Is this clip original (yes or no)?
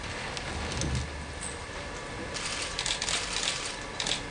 yes